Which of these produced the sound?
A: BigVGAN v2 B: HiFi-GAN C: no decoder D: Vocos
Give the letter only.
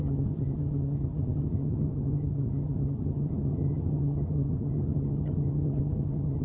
B